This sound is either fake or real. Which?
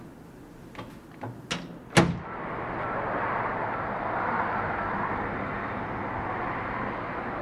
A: real